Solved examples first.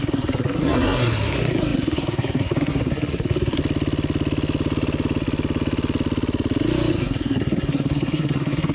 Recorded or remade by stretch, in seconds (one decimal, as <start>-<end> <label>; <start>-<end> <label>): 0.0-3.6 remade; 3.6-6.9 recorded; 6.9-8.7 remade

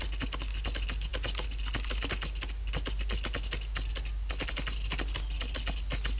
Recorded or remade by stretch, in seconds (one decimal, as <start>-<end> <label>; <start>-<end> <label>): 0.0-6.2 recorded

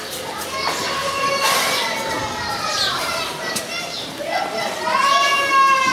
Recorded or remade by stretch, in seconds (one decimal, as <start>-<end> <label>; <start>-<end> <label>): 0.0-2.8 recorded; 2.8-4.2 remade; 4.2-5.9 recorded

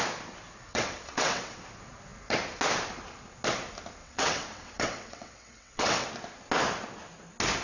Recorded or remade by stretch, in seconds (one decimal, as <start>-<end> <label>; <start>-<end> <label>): 0.0-0.7 recorded; 0.7-1.6 remade; 1.6-4.0 recorded; 4.0-6.1 remade; 6.1-7.6 recorded

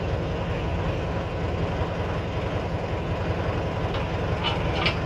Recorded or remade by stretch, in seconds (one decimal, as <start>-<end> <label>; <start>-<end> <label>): 0.0-5.1 recorded